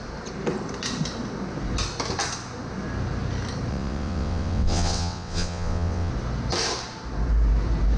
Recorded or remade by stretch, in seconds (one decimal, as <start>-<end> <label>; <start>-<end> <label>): 0.0-3.7 recorded; 3.7-6.1 remade; 6.1-8.0 recorded